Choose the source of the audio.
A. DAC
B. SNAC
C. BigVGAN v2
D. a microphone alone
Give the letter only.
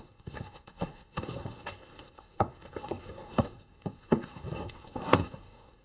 B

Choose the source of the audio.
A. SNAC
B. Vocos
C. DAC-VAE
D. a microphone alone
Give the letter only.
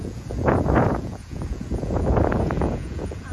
B